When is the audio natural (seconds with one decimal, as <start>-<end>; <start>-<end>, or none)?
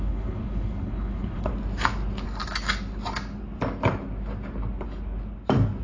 1.5-5.8